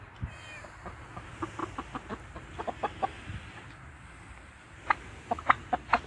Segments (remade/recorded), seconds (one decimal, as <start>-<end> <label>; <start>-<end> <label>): 0.0-6.1 recorded